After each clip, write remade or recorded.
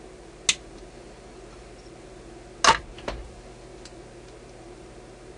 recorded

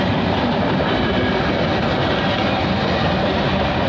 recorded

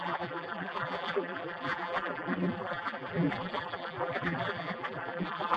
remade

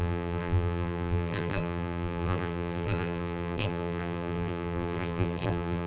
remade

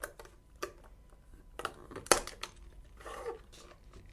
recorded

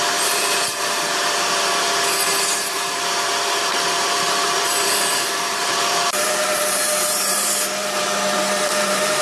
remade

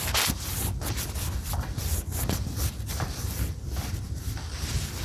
remade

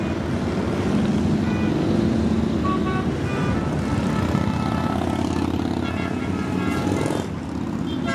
recorded